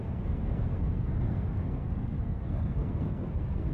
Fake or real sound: fake